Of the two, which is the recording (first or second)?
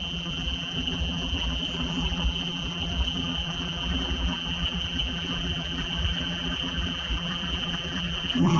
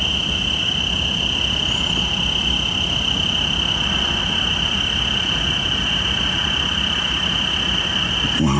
second